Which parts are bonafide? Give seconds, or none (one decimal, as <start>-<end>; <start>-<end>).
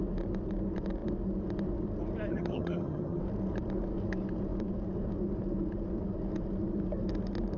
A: 0.0-2.3; 3.2-7.6